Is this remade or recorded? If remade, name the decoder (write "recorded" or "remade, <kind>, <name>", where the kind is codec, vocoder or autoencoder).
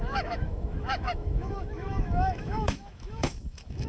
remade, autoencoder, DAC-VAE